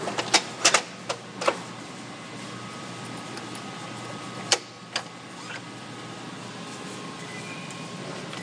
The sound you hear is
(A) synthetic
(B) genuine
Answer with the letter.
B